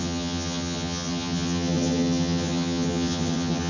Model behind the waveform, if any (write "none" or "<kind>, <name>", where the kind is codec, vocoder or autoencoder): vocoder, HiFi-GAN